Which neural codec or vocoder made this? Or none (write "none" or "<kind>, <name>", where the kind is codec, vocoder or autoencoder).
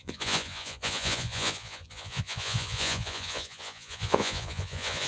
vocoder, Vocos